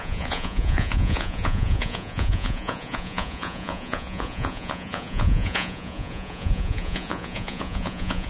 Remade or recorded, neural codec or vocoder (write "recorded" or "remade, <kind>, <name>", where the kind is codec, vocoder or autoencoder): remade, vocoder, Vocos